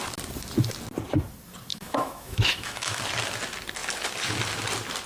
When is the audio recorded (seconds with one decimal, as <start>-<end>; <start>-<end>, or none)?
0.0-1.7; 3.0-5.1